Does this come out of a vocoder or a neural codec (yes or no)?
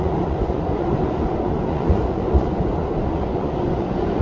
yes